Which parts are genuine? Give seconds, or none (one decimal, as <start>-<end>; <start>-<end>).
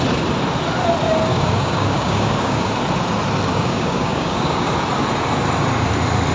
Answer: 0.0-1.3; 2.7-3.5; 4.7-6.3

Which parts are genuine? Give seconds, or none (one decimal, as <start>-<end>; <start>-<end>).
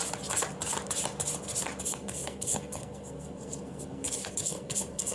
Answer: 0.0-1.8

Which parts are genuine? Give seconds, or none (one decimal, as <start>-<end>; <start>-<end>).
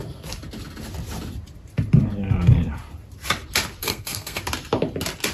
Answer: 0.0-3.8; 4.4-5.3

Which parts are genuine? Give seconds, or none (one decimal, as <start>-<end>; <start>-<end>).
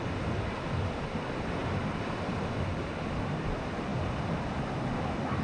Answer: 0.0-1.6; 2.4-5.4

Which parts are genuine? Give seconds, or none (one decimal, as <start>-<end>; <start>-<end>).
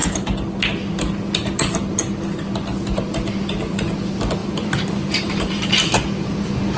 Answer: 0.0-4.4; 5.7-6.8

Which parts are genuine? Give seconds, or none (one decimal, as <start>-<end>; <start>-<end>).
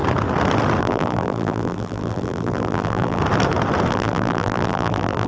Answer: 0.0-0.8; 3.2-3.9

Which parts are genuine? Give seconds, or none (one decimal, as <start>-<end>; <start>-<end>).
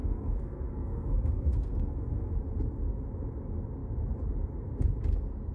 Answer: 2.3-5.5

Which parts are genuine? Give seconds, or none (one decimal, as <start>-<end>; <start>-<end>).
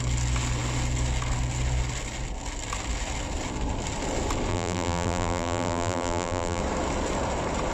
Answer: 0.0-4.5; 6.6-7.7